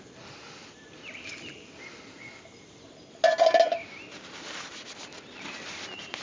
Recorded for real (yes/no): yes